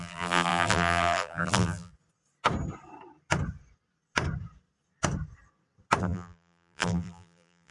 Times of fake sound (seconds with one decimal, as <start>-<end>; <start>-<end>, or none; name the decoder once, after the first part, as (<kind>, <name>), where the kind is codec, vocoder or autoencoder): 0.0-1.9 (vocoder, BigVGAN v2); 6.0-7.7